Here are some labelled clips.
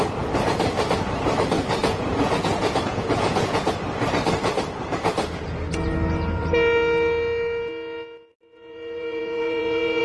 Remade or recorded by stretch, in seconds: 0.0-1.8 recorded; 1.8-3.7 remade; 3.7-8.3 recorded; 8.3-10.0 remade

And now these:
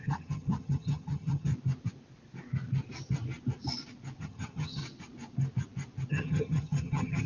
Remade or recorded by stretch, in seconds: 0.0-1.5 remade; 1.5-4.2 recorded; 4.2-4.8 remade; 4.8-6.1 recorded; 6.1-7.3 remade

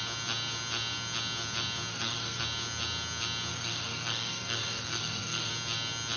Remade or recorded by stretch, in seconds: 0.0-1.9 recorded; 1.9-2.4 remade; 2.4-3.5 recorded; 3.5-5.5 remade; 5.5-6.2 recorded

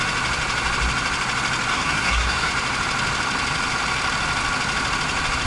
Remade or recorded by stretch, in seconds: 0.0-1.7 recorded; 1.7-2.5 remade; 2.5-5.5 recorded

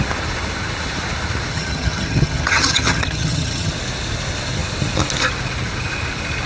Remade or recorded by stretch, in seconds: 0.0-1.5 recorded; 1.5-3.7 remade; 3.7-6.5 recorded

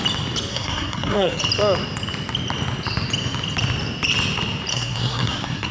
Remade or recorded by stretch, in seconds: 0.0-0.5 recorded; 0.5-1.4 remade; 1.4-4.7 recorded; 4.7-5.7 remade